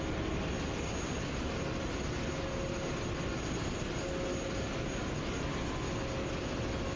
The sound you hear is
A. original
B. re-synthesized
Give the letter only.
A